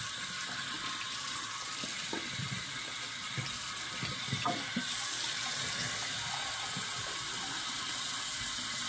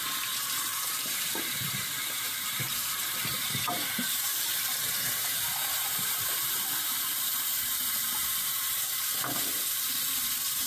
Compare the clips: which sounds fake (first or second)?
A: second